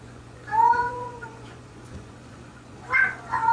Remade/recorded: remade